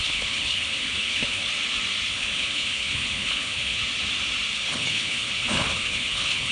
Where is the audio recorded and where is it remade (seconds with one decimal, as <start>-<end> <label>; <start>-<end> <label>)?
0.0-1.5 remade; 1.5-2.1 recorded; 2.1-3.8 remade; 3.8-4.5 recorded; 4.5-6.5 remade